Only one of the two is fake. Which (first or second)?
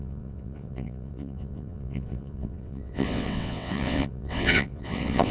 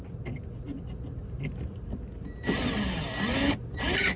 first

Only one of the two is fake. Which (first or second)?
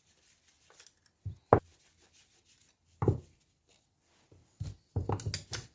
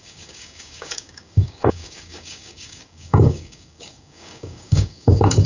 second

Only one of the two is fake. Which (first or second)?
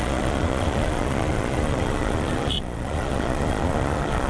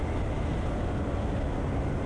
first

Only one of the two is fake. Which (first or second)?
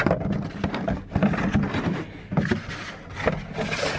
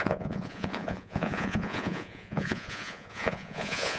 second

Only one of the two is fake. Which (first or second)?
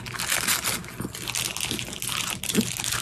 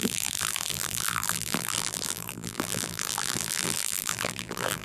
second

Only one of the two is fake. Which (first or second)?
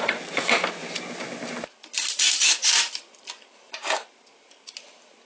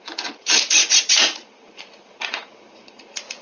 second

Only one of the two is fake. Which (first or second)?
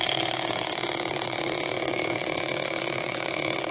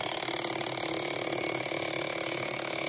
first